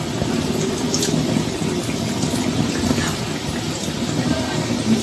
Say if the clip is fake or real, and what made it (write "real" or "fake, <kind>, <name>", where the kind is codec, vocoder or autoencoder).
real